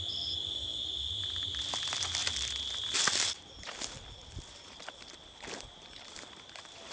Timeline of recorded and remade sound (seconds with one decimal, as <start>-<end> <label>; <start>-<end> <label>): 0.0-6.9 recorded